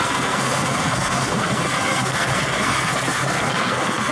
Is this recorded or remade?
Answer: remade